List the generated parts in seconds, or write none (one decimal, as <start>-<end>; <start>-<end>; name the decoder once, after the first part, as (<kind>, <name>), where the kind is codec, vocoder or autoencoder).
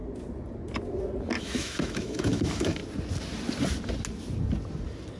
1.4-2.8 (autoencoder, DAC-VAE)